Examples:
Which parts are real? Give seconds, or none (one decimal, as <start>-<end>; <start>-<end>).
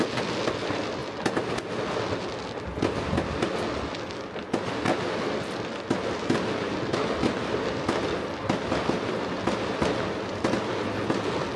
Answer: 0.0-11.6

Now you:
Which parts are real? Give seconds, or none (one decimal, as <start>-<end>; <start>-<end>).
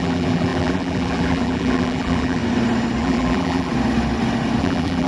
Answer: 2.4-3.0; 3.7-4.6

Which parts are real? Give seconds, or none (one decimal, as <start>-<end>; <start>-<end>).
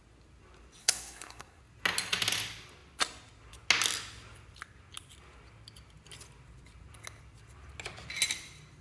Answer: 0.0-0.8; 1.6-8.8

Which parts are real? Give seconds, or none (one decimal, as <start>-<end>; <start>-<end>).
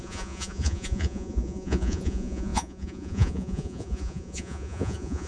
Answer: none